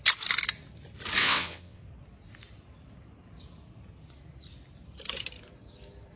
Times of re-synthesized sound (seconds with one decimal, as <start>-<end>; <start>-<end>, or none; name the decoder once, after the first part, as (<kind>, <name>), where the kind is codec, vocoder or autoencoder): 1.2-1.8 (vocoder, WaveNeXt)

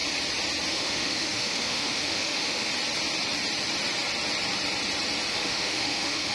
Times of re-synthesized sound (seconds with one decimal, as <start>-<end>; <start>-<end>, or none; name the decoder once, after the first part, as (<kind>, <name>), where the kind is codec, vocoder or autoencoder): 0.7-2.7 (autoencoder, DAC-VAE); 5.3-6.3

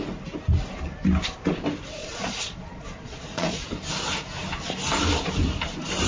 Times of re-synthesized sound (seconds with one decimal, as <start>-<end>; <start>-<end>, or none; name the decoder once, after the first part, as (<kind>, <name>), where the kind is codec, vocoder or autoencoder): 2.0-3.6 (vocoder, Vocos)

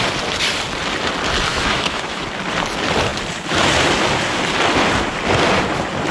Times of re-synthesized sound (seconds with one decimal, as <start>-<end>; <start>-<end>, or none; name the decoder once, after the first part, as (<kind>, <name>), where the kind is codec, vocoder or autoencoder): 1.5-2.2 (autoencoder, DAC-VAE)

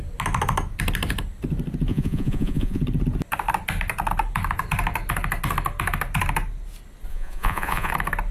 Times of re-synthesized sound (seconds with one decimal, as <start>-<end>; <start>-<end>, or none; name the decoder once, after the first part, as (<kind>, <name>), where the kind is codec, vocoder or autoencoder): 1.9-2.8 (vocoder, Vocos); 7.1-7.9

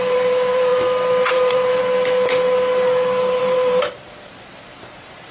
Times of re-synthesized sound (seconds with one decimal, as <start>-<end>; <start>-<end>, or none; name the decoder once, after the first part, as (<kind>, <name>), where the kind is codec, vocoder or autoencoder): 0.0-0.7 (vocoder, BigVGAN v2); 1.3-1.8; 3.4-5.3

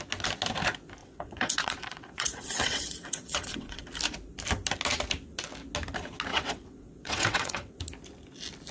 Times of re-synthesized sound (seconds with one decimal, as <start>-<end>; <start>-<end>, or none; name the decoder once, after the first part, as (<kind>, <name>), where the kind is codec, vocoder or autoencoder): 1.0-3.8 (vocoder, WaveNeXt); 6.3-7.8